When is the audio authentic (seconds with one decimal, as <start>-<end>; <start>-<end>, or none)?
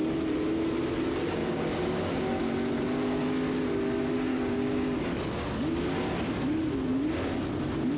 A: 0.0-1.4; 2.4-4.3; 5.0-6.9; 7.4-8.0